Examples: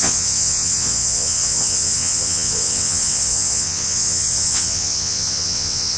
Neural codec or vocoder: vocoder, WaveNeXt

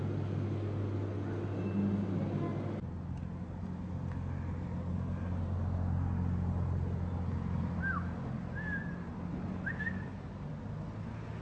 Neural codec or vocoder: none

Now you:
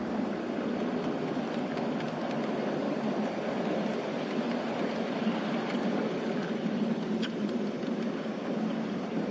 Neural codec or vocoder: none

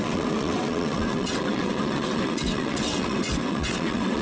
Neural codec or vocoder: vocoder, WaveNeXt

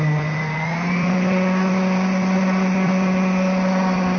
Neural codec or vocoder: none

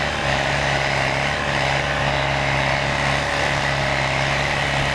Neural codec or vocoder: none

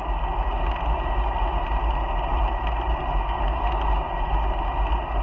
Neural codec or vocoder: none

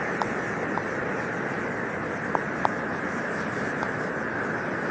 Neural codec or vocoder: none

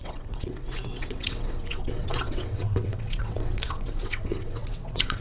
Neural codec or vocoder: vocoder, WaveNeXt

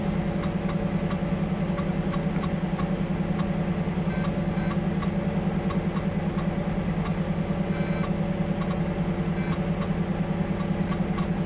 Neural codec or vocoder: none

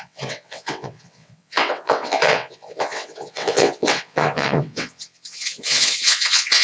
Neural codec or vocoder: vocoder, WaveNeXt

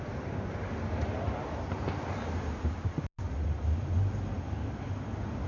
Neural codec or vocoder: none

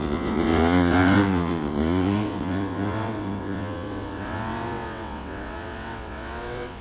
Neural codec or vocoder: vocoder, WaveNeXt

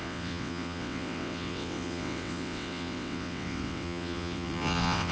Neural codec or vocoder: vocoder, WaveNeXt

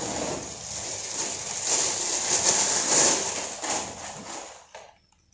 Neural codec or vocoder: none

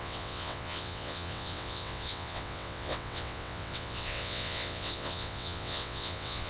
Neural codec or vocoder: vocoder, WaveNeXt